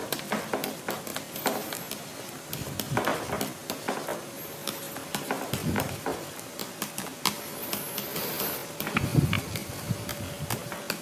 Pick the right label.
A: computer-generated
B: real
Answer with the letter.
B